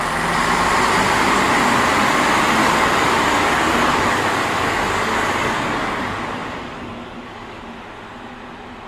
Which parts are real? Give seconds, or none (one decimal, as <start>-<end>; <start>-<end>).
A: 0.0-2.6; 7.6-8.9